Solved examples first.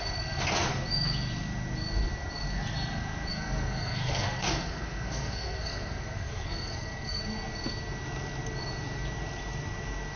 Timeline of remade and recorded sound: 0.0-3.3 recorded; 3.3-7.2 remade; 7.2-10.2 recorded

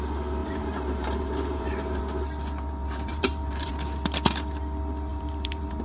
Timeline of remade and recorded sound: 0.0-0.4 recorded; 0.4-2.0 remade; 2.0-2.8 recorded; 2.8-3.7 remade; 3.7-5.1 recorded; 5.1-5.8 remade

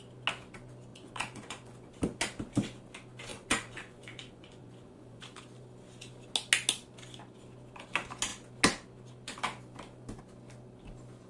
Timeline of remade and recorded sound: 0.0-0.9 recorded; 0.9-1.9 remade; 1.9-3.3 recorded; 3.3-5.2 remade; 5.2-11.3 recorded

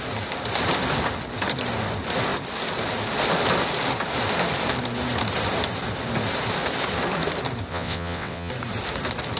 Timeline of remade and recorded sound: 0.0-7.7 recorded; 7.7-8.5 remade; 8.5-9.4 recorded

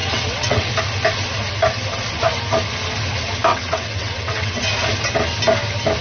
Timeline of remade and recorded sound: 0.0-0.7 remade; 0.7-3.5 recorded; 3.5-4.6 remade; 4.6-6.0 recorded

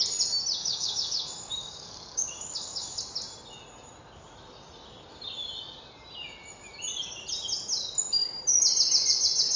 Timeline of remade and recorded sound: 0.0-0.6 recorded; 0.6-3.0 remade; 3.0-9.6 recorded

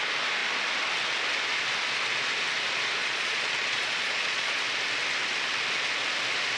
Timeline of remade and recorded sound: 0.0-3.0 recorded; 3.0-4.6 remade; 4.6-6.6 recorded

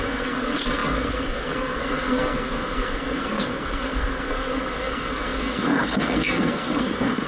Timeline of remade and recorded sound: 0.0-7.3 remade